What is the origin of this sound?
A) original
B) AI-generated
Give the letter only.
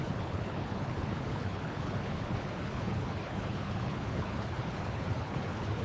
B